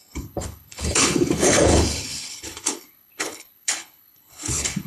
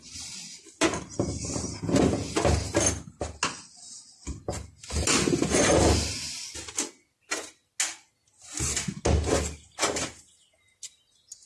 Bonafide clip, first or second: second